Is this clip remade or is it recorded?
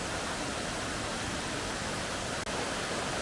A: recorded